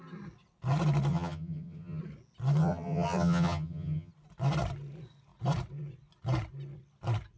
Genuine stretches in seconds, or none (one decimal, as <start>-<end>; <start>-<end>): 0.0-1.1; 2.0-2.6; 4.1-7.4